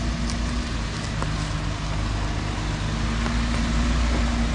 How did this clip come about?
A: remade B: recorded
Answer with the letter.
B